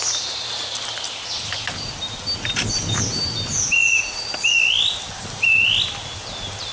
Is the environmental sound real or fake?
real